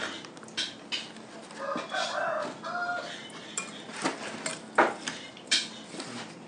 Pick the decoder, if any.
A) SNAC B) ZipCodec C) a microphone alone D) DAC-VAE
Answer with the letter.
C